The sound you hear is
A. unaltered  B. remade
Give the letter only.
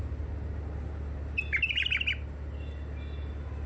A